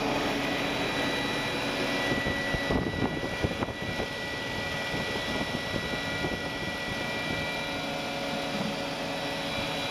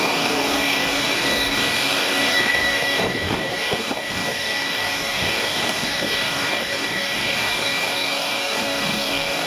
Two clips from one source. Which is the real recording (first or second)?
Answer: first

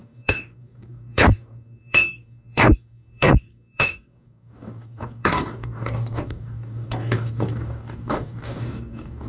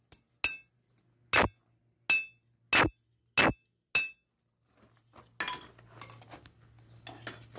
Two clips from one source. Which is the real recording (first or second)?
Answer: second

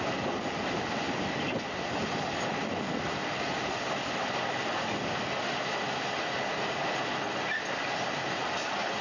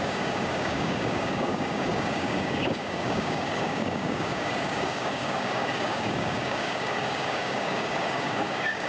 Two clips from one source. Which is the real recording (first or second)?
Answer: first